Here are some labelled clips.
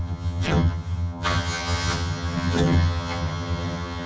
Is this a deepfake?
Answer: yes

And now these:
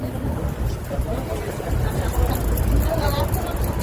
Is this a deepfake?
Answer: yes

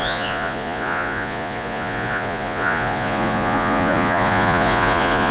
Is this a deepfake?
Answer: yes